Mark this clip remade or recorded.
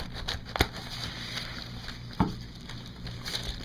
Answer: recorded